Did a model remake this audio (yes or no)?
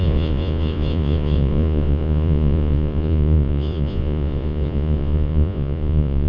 yes